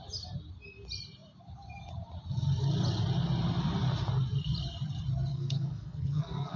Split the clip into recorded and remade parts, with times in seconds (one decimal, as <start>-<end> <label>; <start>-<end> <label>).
0.0-5.3 recorded; 5.3-6.6 remade